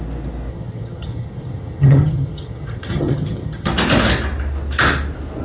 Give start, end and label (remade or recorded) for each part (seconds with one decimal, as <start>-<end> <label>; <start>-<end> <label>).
0.0-0.5 recorded; 0.5-3.7 remade; 3.7-5.4 recorded